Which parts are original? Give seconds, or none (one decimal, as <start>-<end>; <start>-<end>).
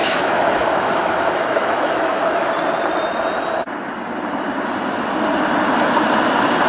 2.5-6.7